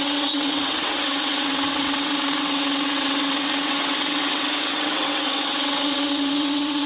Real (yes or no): no